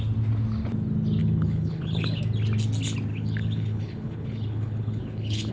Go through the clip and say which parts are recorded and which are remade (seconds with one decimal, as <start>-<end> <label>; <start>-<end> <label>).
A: 0.0-1.2 recorded; 1.2-2.2 remade; 2.2-3.1 recorded; 3.1-5.5 remade